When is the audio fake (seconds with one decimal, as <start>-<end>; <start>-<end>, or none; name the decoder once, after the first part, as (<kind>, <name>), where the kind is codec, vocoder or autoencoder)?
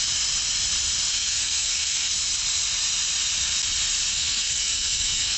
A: 1.1-2.1 (codec, SNAC); 4.1-5.4